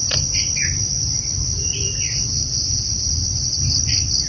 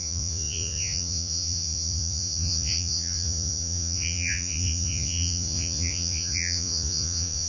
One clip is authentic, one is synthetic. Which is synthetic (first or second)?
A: second